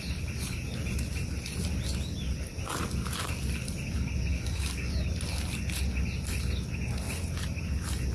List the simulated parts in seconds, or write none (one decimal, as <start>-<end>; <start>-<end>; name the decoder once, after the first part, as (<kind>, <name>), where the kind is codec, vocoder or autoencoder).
4.3-4.9 (codec, DAC)